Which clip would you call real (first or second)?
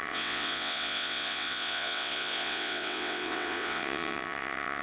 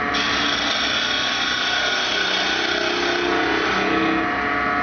second